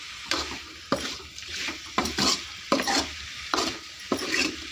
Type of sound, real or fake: fake